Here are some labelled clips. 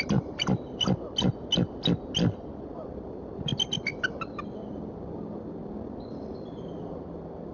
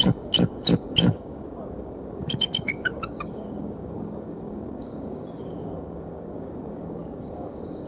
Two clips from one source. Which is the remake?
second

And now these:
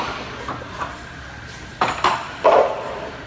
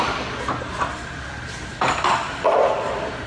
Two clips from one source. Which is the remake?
first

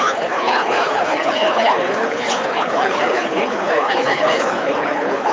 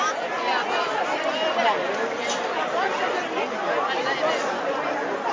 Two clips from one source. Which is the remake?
first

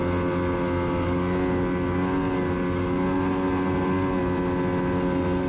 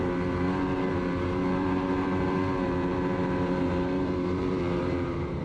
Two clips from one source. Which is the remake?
second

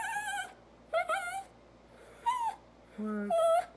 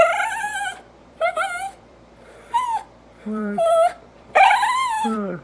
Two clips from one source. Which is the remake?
second